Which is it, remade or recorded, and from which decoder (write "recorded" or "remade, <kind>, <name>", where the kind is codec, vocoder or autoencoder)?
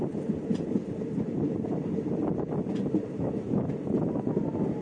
remade, vocoder, BigVGAN v2